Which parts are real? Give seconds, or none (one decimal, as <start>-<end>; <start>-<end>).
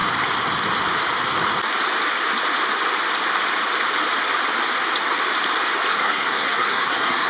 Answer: 0.0-5.9